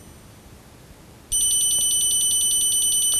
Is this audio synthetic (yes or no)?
no